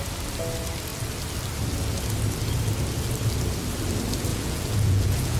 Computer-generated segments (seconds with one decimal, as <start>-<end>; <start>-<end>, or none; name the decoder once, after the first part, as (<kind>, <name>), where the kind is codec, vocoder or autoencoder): 4.3-5.4 (vocoder, Vocos)